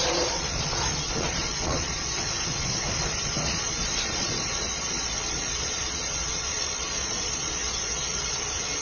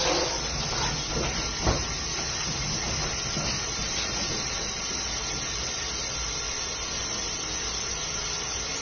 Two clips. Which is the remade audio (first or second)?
first